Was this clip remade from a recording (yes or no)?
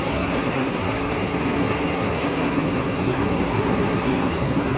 yes